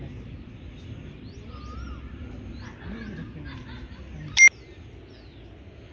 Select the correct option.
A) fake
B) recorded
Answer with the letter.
B